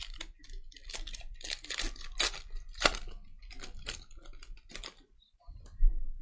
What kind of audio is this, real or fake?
fake